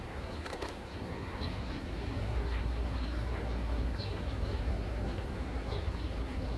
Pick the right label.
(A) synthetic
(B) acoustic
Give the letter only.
A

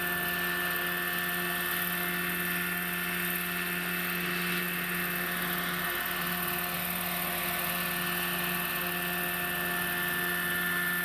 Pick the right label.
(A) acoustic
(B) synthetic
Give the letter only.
A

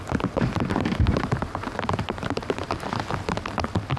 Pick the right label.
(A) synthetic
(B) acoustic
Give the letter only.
B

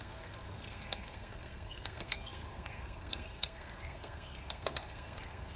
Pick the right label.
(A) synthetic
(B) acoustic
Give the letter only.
A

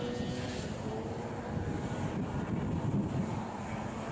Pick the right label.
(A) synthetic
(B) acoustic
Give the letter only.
B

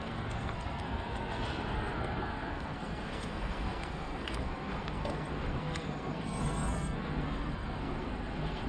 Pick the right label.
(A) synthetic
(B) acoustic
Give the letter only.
A